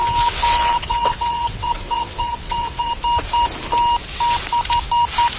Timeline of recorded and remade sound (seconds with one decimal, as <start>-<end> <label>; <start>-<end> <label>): 0.0-2.9 remade; 2.9-5.4 recorded